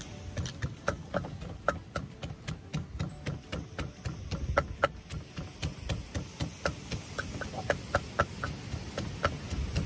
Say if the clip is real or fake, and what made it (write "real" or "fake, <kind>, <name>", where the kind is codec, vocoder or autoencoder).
real